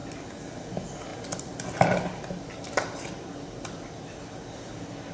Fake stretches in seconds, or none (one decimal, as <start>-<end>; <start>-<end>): none